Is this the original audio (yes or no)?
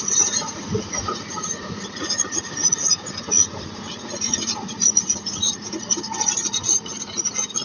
no